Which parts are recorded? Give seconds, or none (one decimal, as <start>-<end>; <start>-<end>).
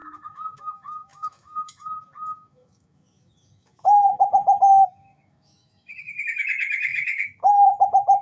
none